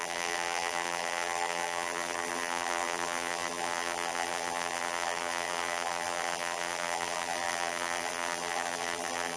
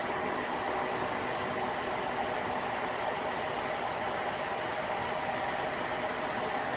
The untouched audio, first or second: second